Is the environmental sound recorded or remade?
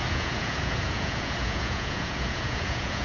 remade